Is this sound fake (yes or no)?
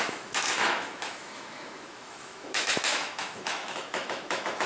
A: yes